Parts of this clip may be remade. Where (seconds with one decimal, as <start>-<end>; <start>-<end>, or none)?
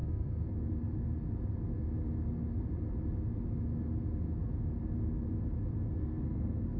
0.0-0.5; 6.0-6.8